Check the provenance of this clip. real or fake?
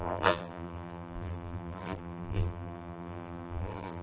fake